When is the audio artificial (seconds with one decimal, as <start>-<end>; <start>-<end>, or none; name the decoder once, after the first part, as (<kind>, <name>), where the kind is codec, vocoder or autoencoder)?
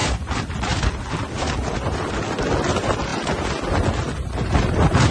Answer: none